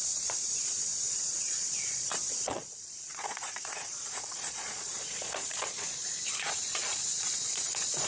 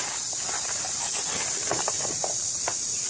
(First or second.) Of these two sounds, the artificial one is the first